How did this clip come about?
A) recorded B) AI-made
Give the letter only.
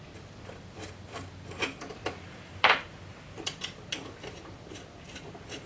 A